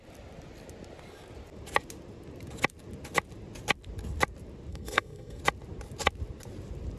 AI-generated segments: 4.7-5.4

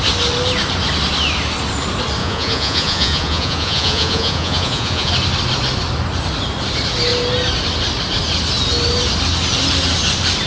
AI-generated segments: 2.2-5.1

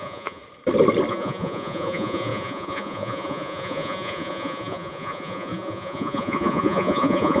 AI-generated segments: 0.0-0.4; 1.1-7.4

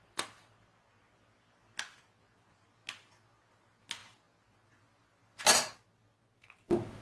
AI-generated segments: none

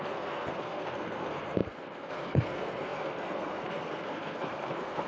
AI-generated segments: 0.0-5.1

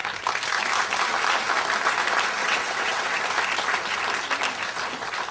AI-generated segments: 2.4-3.2

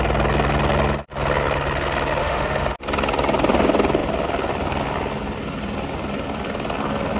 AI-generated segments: 2.2-2.8